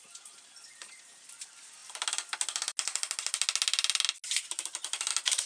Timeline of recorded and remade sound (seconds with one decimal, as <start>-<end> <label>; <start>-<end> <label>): 0.0-5.5 recorded